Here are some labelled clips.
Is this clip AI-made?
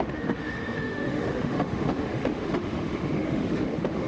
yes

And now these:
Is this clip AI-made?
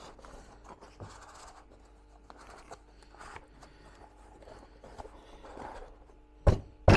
no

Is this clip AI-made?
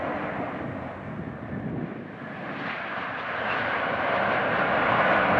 no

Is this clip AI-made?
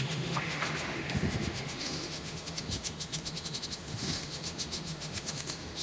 yes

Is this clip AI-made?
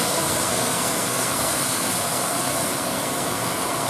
yes